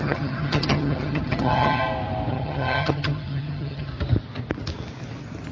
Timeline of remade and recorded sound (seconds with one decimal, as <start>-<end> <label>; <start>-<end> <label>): 0.0-1.8 remade; 1.8-2.3 recorded; 2.3-3.9 remade; 3.9-5.5 recorded